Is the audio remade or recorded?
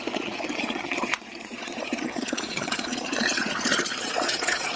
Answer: remade